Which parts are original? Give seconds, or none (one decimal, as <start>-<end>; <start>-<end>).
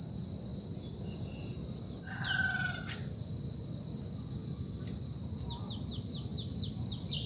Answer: 0.0-7.3